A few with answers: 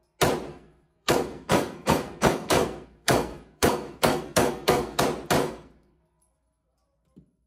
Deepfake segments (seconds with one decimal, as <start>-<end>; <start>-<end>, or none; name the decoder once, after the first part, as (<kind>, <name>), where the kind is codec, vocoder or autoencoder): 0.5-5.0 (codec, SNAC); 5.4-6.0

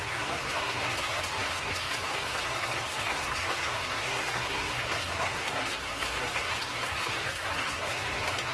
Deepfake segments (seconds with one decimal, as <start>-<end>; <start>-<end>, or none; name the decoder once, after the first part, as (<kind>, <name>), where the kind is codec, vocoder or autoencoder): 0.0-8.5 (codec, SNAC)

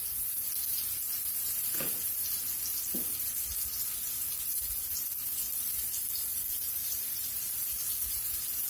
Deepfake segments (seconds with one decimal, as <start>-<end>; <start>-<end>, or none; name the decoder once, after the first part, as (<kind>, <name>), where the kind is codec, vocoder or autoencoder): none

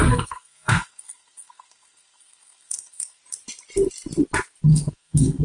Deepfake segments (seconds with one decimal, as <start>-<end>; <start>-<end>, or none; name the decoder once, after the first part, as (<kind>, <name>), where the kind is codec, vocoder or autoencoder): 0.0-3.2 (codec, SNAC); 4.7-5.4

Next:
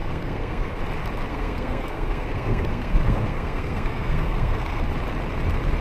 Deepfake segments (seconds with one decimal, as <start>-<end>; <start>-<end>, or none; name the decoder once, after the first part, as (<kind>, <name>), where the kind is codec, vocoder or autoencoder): 0.0-0.8 (codec, SNAC); 1.3-4.8

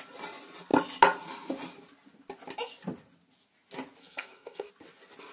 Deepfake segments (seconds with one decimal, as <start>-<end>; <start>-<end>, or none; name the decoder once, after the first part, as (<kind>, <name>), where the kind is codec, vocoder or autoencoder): 4.0-4.7 (codec, SNAC)